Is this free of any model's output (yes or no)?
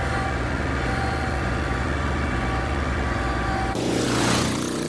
no